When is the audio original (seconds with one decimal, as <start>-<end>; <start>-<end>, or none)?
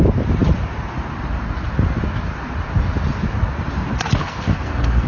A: 0.0-4.2